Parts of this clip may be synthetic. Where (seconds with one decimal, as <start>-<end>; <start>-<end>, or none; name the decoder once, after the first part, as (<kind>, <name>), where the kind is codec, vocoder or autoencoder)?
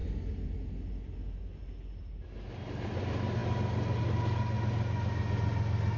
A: none